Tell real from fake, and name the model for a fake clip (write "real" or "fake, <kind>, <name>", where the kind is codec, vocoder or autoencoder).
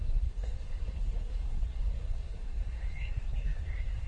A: fake, codec, SNAC